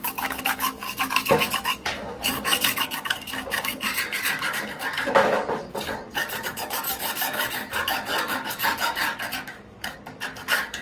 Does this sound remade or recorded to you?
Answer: remade